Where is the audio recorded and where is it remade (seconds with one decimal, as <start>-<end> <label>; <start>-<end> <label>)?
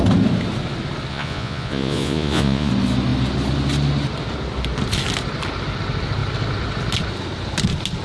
0.0-1.1 recorded; 1.1-2.7 remade; 2.7-8.0 recorded